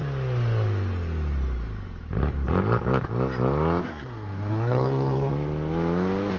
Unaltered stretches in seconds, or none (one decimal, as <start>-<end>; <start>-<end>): 0.0-3.8; 5.3-6.4